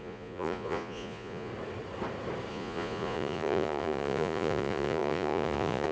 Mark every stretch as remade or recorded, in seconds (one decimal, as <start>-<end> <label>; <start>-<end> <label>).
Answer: 0.0-1.5 remade; 1.5-2.5 recorded; 2.5-5.9 remade